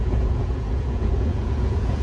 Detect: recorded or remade remade